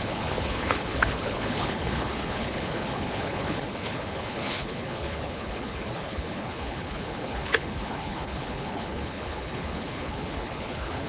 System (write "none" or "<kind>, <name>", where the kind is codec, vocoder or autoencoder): codec, HILCodec